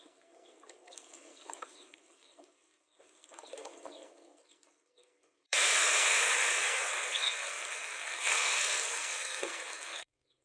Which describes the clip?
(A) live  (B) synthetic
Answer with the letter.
B